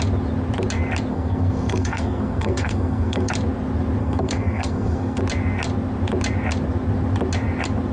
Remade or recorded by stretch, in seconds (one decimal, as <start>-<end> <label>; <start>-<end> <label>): 0.0-1.1 recorded; 1.1-3.3 remade; 3.3-4.0 recorded; 4.0-5.2 remade; 5.2-7.9 recorded